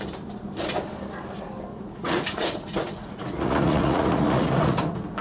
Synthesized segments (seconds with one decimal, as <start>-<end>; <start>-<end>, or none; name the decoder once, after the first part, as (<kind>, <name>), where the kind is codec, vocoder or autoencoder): 1.7-4.8 (vocoder, Vocos)